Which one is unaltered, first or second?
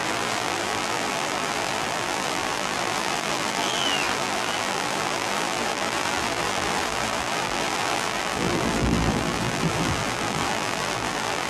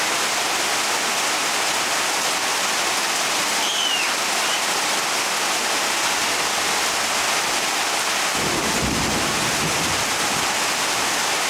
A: second